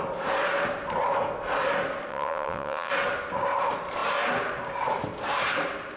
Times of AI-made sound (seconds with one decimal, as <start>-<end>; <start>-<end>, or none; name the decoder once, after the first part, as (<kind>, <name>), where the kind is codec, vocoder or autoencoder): 2.1-2.9 (vocoder, WaveNeXt)